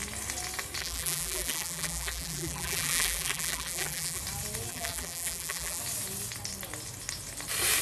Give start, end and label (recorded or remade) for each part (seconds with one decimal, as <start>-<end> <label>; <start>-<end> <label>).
0.0-0.8 recorded; 0.8-4.2 remade; 4.2-4.7 recorded; 4.7-5.8 remade; 5.8-7.8 recorded